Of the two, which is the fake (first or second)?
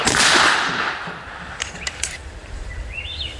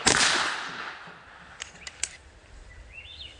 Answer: first